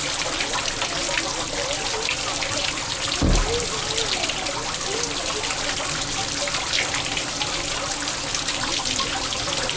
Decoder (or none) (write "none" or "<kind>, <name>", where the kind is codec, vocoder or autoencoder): none